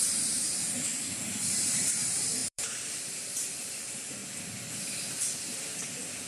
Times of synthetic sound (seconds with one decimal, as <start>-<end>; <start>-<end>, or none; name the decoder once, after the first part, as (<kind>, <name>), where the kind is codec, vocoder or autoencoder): 0.0-4.2 (vocoder, BigVGAN v2)